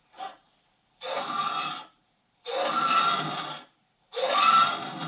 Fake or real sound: real